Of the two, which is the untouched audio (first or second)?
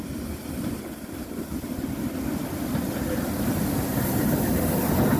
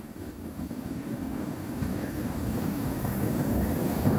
first